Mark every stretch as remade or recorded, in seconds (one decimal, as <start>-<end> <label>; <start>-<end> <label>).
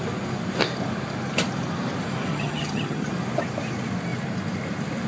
0.0-2.3 recorded; 2.3-3.1 remade; 3.1-5.1 recorded